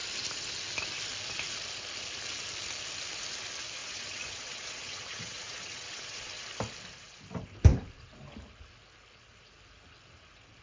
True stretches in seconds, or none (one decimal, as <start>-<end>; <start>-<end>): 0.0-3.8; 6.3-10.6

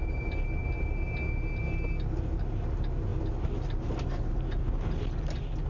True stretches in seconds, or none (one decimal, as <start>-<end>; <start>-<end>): 0.0-5.7

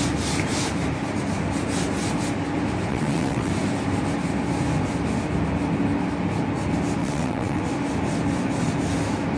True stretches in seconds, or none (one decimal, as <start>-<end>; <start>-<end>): 0.0-2.9; 3.5-7.0; 7.6-9.4